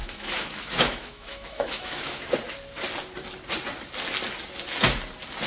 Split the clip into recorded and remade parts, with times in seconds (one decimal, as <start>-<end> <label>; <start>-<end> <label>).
0.0-2.3 remade; 2.3-5.5 recorded